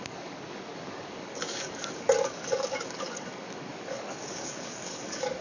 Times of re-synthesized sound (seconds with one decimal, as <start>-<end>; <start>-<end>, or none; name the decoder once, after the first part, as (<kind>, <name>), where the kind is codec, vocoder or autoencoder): 0.0-5.4 (codec, DAC)